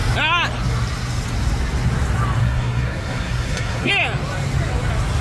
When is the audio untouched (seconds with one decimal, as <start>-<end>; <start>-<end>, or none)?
0.0-2.4; 3.9-5.2

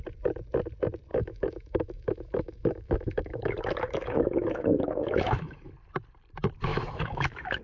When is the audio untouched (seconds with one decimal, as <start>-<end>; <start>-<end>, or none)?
0.0-1.1; 5.7-6.7

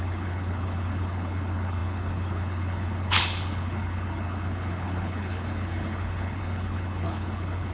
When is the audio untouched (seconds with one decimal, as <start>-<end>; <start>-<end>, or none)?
none

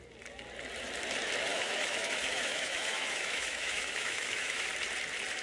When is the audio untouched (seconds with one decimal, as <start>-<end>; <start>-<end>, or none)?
0.0-1.5; 4.7-5.4

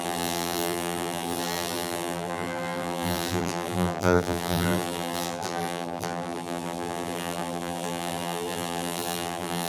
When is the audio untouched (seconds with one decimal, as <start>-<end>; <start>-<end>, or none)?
none